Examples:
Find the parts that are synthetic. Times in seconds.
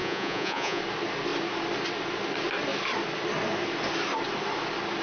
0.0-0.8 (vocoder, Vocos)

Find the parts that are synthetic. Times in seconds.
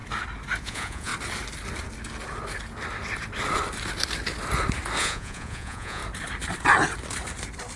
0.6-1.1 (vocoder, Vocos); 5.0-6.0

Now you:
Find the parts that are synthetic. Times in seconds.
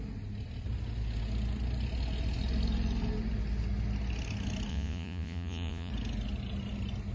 4.7-5.9 (vocoder, Vocos)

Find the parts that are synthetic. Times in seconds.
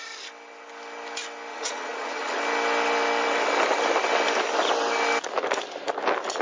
1.5-2.4 (vocoder, Vocos)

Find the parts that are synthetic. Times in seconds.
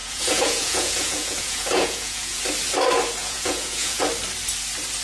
0.0-2.4 (vocoder, Vocos); 3.2-4.0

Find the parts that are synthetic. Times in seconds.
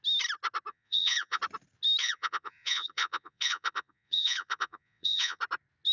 0.7-1.4 (vocoder, Vocos); 2.0-5.4